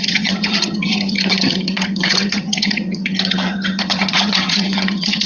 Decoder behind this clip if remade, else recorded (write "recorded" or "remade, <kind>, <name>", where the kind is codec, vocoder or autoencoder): remade, vocoder, HiFi-GAN